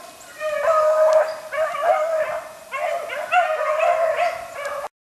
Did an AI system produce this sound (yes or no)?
no